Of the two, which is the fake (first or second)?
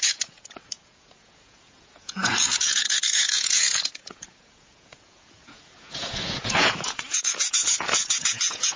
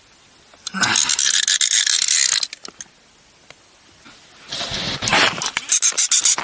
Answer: first